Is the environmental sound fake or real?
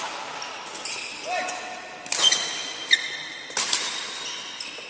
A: real